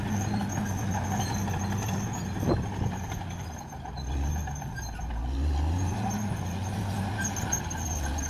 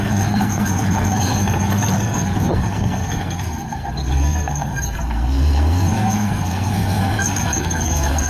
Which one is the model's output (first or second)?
second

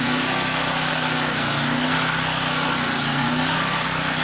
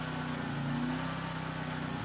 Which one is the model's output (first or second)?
first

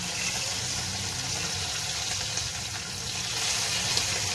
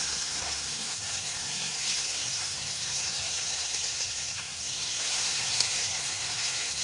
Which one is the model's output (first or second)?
second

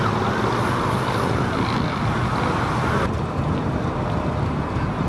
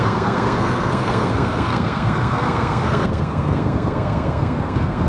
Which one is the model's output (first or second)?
second